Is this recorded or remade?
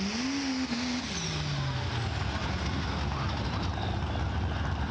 recorded